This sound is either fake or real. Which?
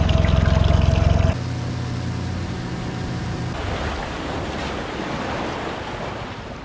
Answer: real